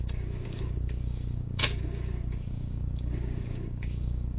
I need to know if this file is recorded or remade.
remade